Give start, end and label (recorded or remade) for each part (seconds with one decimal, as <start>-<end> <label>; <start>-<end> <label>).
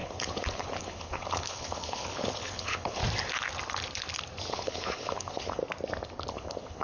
0.0-3.0 remade; 3.0-4.5 recorded; 4.5-5.6 remade; 5.6-6.3 recorded; 6.3-6.8 remade